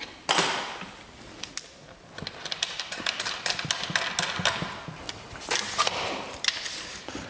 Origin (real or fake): real